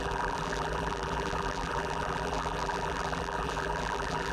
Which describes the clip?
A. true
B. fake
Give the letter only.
B